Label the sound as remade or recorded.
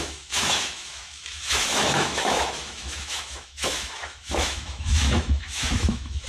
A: remade